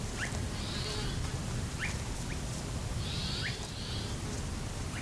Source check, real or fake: real